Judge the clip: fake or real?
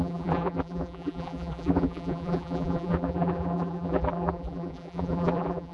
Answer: fake